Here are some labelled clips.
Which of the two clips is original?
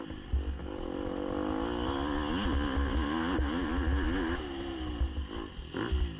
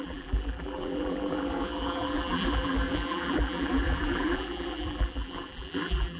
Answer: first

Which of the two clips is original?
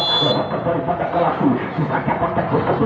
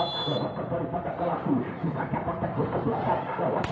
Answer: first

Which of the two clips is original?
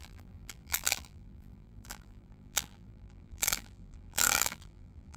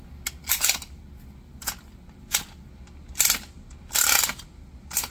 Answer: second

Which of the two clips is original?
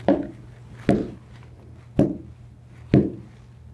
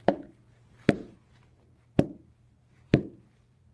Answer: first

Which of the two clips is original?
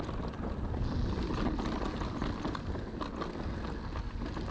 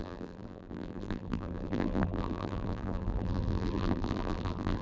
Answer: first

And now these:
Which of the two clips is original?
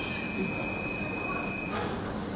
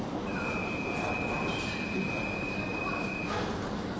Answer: first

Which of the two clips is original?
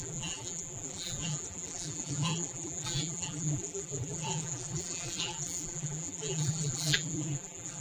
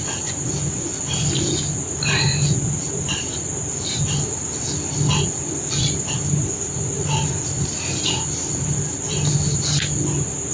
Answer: second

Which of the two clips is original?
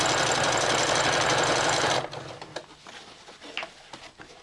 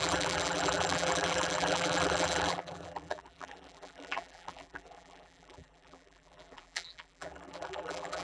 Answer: first